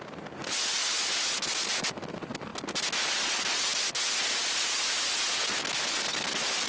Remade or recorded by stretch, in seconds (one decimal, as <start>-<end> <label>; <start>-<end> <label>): 0.0-6.7 recorded